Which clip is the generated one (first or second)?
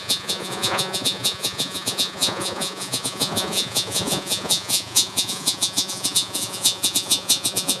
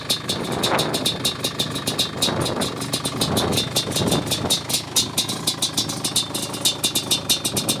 first